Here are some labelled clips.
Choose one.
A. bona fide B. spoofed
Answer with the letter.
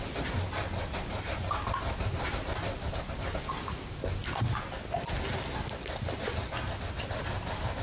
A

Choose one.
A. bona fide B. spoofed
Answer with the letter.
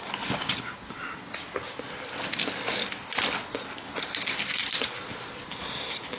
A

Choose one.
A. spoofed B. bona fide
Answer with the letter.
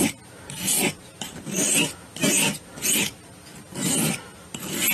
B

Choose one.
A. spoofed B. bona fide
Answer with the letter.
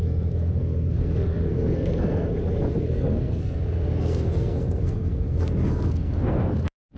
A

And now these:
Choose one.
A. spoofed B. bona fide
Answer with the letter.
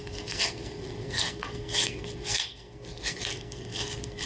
A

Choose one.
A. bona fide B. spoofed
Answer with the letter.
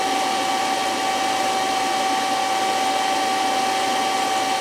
A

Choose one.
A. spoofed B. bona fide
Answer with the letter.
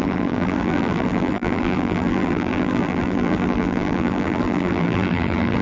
A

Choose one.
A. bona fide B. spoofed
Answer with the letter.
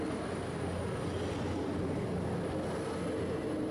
A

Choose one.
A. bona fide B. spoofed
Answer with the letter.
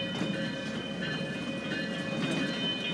A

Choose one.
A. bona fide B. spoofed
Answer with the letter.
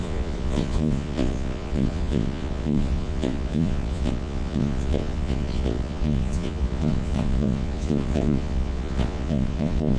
B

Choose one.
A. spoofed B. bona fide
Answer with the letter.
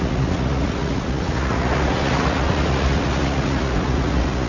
A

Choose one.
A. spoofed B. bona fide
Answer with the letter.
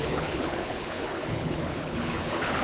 A